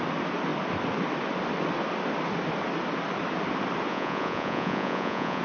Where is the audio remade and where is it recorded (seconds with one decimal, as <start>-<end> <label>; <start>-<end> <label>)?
0.0-3.9 recorded; 3.9-5.4 remade